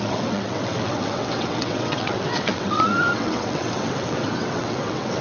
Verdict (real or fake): fake